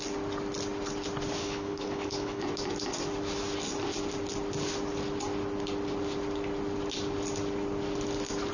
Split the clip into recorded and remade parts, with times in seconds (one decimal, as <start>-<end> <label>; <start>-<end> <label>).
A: 0.0-1.4 recorded; 1.4-2.4 remade; 2.4-8.5 recorded